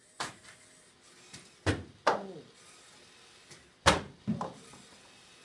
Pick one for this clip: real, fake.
real